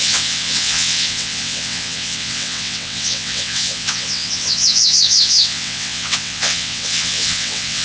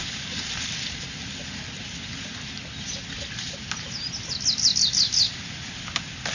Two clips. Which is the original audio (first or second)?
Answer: second